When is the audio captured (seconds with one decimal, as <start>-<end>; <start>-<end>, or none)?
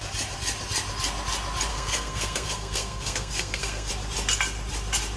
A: 0.0-1.7; 3.9-5.2